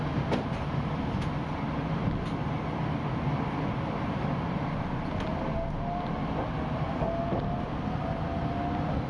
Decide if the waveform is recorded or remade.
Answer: recorded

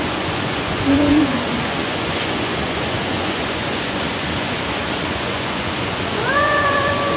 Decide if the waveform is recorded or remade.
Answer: remade